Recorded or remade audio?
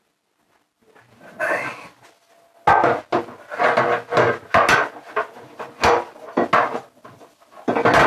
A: recorded